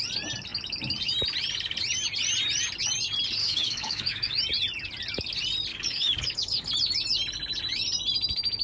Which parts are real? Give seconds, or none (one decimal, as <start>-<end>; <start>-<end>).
0.0-3.4; 4.4-5.7; 6.7-8.6